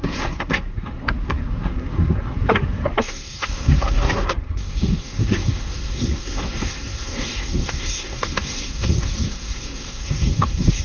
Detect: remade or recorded remade